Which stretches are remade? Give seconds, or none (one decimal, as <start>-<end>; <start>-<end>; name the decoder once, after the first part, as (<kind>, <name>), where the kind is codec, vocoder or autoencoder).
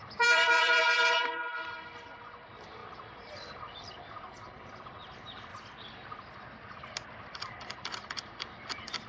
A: 0.0-5.5 (vocoder, BigVGAN v2); 7.4-9.1